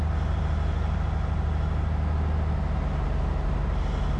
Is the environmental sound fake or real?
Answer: real